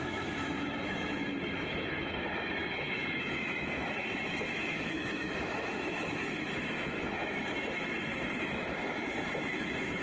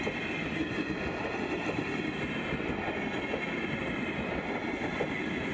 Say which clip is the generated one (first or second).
first